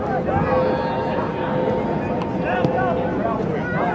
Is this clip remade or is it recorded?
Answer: recorded